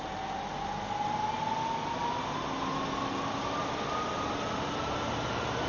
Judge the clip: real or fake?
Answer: real